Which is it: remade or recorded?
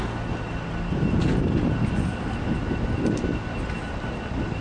recorded